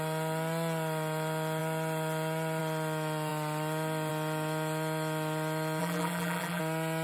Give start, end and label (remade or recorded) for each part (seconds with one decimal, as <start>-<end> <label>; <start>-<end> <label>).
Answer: 0.0-5.8 recorded; 5.8-6.6 remade; 6.6-7.0 recorded